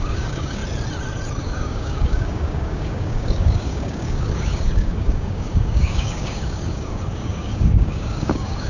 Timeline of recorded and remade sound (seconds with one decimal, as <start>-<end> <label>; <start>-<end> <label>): 0.0-0.6 remade; 0.6-1.4 recorded; 1.4-8.7 remade